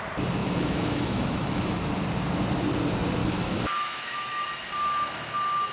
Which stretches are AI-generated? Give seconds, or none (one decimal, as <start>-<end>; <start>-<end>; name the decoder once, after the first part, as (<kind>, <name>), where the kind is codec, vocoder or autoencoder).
0.4-1.6 (autoencoder, DAC-VAE); 3.2-4.5